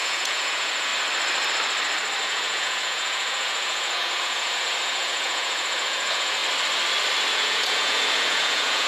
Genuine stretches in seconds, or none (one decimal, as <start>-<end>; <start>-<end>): 0.9-2.2; 6.4-7.3